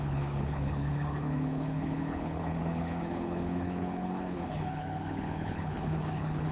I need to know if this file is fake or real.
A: fake